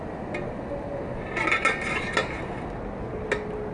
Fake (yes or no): no